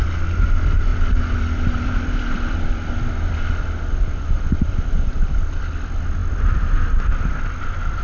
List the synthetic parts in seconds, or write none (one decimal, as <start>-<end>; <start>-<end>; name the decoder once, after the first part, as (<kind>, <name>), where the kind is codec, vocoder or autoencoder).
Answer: 0.9-5.6 (vocoder, BigVGAN v2)